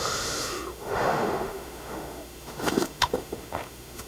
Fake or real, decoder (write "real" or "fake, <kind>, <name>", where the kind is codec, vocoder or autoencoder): fake, autoencoder, DAC-VAE